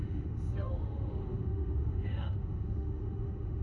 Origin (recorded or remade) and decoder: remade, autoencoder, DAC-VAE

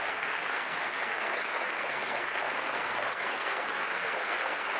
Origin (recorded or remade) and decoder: remade, codec, SNAC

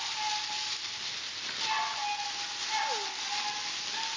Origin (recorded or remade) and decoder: recorded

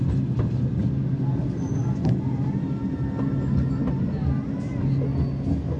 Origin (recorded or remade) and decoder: recorded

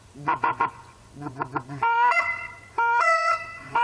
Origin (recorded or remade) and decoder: remade, vocoder, Vocos